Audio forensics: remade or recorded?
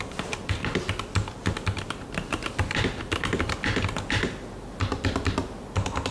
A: recorded